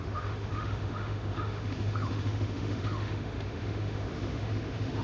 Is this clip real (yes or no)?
no